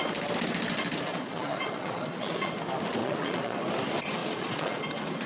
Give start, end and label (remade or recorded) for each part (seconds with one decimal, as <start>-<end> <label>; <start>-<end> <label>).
0.0-1.1 recorded; 1.1-2.5 remade; 2.5-3.0 recorded; 3.0-3.6 remade; 3.6-4.2 recorded; 4.2-4.8 remade; 4.8-5.3 recorded